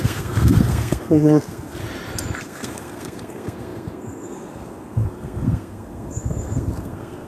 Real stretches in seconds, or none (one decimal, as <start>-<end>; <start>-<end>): 1.8-2.4